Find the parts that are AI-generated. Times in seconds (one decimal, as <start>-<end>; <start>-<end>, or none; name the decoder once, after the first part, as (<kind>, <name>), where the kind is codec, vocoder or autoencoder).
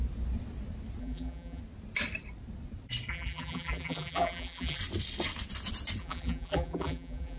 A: 1.0-1.6 (vocoder, BigVGAN v2); 3.1-4.8; 6.0-7.4